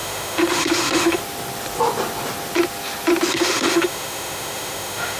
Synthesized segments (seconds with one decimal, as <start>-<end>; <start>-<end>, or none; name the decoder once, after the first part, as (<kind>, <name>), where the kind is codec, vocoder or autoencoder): 0.0-1.2 (autoencoder, DAC-VAE); 3.3-5.2